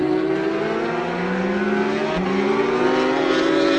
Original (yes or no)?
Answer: yes